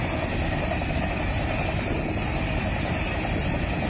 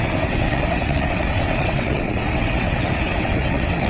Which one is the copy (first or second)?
second